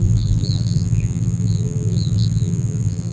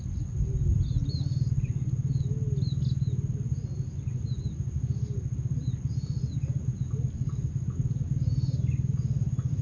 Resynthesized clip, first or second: first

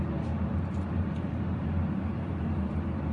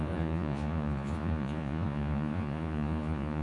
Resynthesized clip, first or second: second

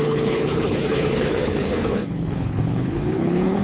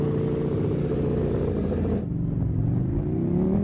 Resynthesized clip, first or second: first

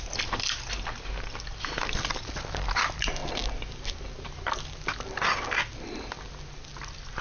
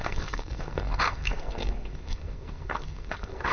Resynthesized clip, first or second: second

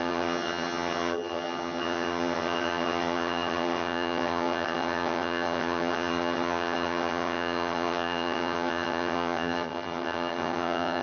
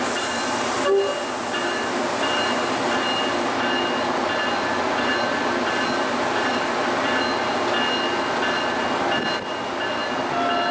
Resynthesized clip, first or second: first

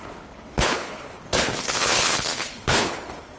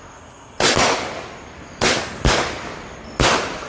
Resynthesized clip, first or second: first